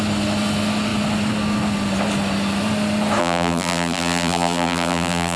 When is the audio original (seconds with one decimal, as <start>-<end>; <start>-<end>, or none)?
0.0-3.2